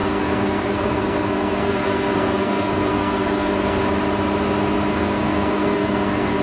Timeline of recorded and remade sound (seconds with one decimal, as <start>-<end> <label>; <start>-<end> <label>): 0.0-3.8 remade; 3.8-4.9 recorded; 4.9-6.4 remade